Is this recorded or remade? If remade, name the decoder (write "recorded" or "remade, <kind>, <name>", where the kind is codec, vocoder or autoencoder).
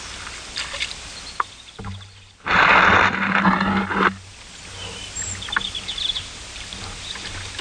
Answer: recorded